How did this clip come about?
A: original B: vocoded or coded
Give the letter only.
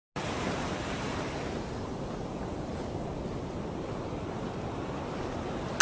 A